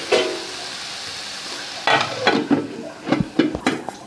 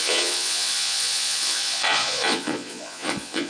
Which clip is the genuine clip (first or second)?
first